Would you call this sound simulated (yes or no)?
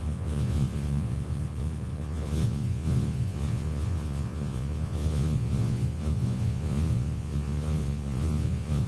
yes